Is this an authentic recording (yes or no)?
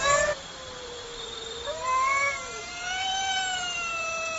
no